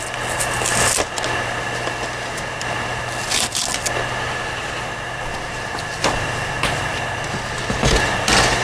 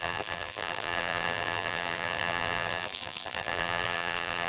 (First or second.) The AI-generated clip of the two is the second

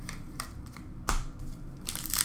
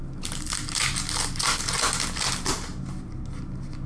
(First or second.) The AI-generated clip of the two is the first